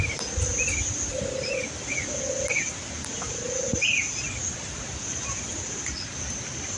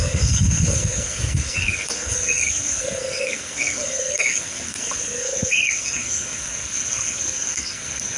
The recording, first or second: first